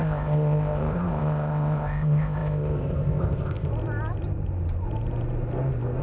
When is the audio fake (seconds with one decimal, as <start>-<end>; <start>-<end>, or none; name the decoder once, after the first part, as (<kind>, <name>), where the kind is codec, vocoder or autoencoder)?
0.0-3.7 (codec, ZipCodec)